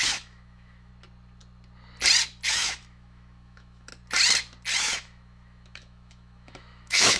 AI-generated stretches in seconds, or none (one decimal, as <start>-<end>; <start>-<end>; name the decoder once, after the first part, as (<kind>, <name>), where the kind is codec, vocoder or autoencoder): 0.0-0.9 (autoencoder, DAC-VAE); 2.5-3.9; 4.8-7.2